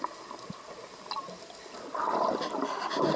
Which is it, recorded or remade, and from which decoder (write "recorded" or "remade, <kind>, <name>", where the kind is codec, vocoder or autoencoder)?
remade, vocoder, BigVGAN v2